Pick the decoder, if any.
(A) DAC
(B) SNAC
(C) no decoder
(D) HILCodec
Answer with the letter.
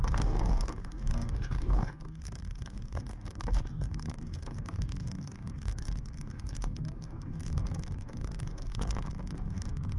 A